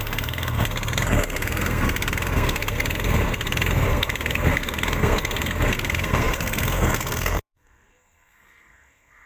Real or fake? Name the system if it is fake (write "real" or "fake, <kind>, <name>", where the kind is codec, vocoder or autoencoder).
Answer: fake, codec, SNAC